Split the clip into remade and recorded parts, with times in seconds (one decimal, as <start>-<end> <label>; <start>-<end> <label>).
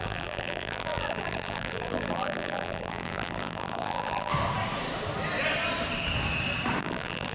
0.0-4.3 remade; 4.3-6.8 recorded; 6.8-7.3 remade